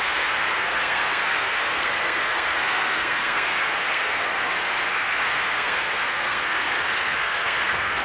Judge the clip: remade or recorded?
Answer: remade